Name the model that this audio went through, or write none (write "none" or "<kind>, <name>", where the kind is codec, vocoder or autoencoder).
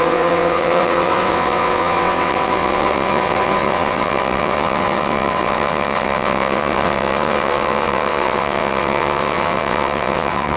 vocoder, WaveNeXt